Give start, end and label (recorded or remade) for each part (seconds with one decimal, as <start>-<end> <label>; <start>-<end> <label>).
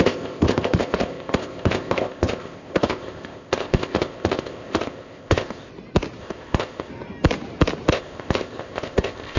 0.0-5.7 remade; 5.7-6.2 recorded; 6.2-6.9 remade; 6.9-7.9 recorded; 7.9-9.4 remade